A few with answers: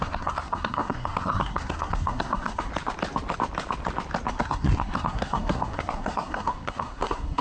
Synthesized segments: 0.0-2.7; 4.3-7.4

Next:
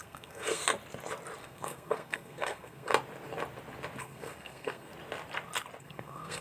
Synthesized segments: 0.0-0.6; 1.4-2.9; 4.0-4.9; 5.8-6.4

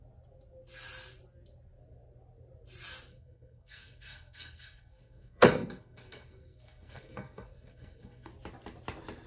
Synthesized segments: 3.1-8.3

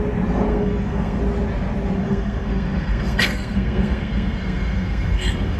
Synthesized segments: 0.5-1.2; 2.0-5.6

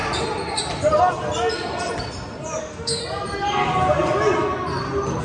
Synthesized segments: 2.6-3.0

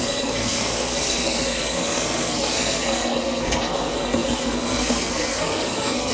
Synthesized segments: 0.0-6.1